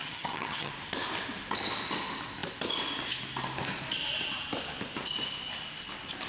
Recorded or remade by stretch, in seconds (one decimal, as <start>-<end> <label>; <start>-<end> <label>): 0.0-0.7 remade; 0.7-6.3 recorded